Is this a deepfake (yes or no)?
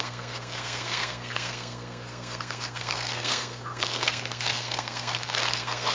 yes